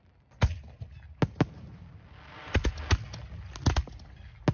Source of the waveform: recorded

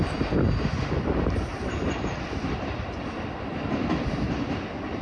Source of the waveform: recorded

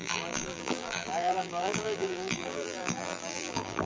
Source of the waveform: remade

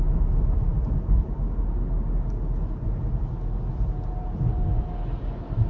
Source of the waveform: recorded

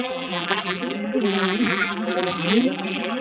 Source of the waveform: remade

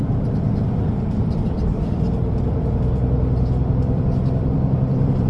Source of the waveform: remade